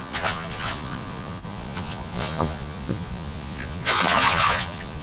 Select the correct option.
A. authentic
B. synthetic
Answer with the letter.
B